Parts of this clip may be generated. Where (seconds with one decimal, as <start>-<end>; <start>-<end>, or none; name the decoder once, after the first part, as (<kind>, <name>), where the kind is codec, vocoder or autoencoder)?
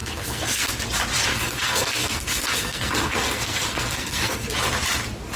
0.0-0.7 (codec, SNAC); 1.3-4.5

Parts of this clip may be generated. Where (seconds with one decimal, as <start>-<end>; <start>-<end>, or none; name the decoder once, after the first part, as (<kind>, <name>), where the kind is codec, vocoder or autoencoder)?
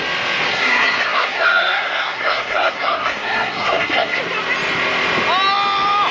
0.5-4.2 (codec, SNAC)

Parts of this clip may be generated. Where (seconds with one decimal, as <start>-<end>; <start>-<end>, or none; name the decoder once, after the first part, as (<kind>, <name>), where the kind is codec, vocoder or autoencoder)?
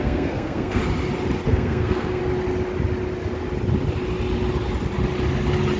0.0-0.8 (codec, SNAC); 1.5-2.2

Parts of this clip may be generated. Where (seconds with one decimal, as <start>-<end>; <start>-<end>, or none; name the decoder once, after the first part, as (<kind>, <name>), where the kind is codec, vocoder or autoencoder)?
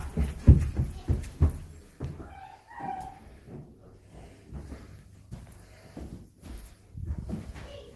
none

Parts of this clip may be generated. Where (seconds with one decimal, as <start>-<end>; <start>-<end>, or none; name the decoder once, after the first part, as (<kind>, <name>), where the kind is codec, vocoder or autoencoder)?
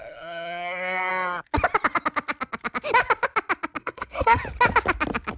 0.0-1.1 (codec, SNAC); 3.8-4.4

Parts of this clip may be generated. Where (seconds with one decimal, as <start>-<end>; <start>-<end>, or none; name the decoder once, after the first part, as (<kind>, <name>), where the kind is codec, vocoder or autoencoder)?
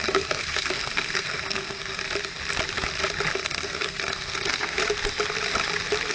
0.0-2.0 (codec, SNAC); 3.3-4.8